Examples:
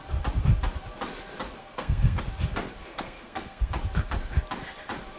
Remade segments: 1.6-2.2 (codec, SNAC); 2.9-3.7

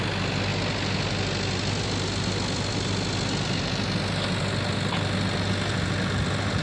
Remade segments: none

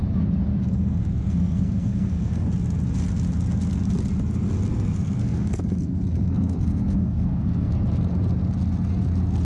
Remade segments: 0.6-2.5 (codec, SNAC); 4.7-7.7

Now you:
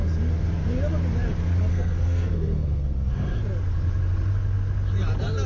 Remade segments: 1.7-3.4 (codec, SNAC)

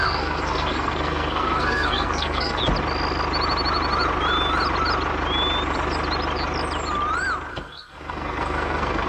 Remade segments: 0.0-2.6 (codec, SNAC); 7.5-9.1

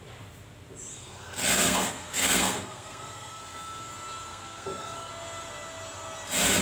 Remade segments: 0.9-3.9 (codec, SNAC); 4.3-5.1

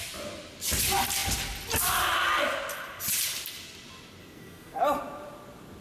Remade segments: 4.2-4.8 (codec, SNAC)